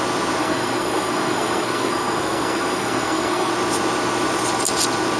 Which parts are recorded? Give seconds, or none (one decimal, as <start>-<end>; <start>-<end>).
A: 0.0-0.4; 3.5-5.2